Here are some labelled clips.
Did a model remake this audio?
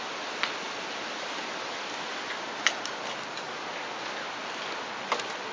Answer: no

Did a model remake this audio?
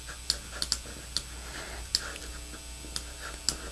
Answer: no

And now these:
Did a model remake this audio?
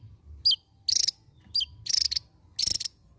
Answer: no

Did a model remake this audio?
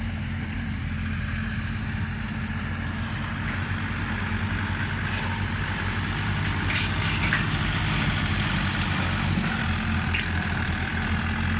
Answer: no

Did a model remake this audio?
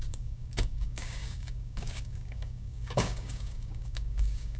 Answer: yes